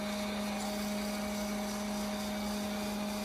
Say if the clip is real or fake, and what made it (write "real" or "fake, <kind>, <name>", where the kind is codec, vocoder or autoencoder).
real